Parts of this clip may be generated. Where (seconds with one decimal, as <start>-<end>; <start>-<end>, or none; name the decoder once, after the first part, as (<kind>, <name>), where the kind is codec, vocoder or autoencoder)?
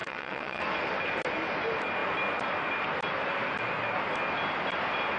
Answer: 0.0-0.6 (vocoder, WaveNeXt)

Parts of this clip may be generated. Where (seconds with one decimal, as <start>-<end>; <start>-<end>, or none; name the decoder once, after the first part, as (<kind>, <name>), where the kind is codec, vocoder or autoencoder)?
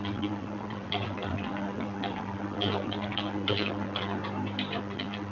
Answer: 0.0-4.2 (vocoder, WaveNeXt); 4.8-5.3